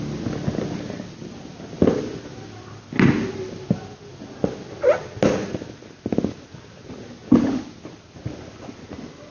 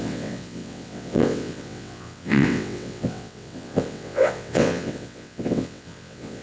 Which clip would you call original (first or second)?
first